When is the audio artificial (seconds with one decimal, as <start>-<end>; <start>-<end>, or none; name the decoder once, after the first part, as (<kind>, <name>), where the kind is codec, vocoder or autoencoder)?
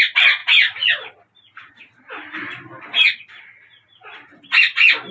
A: none